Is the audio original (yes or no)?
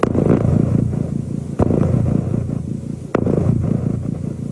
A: yes